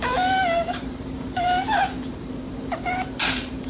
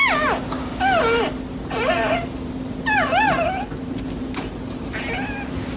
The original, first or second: second